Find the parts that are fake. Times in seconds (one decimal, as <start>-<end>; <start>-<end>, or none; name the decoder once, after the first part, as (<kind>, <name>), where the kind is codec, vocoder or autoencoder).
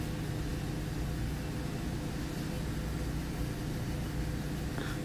none